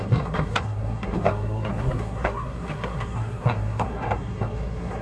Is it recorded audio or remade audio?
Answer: remade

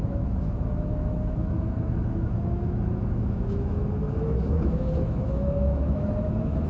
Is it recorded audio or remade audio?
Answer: remade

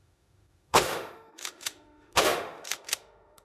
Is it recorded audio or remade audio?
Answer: remade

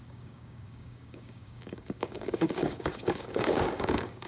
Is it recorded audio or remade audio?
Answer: remade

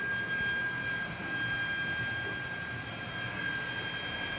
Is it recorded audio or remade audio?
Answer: recorded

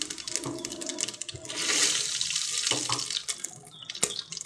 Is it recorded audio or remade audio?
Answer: recorded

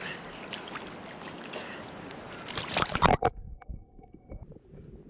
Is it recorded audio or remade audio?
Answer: recorded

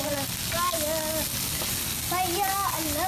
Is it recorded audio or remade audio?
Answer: recorded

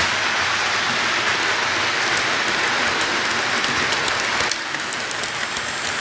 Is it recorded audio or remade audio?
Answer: recorded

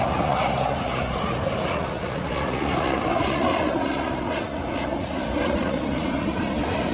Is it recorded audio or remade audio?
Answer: remade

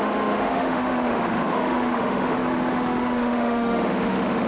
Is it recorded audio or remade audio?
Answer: remade